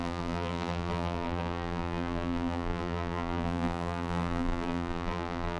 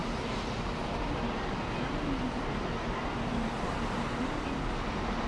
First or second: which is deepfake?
first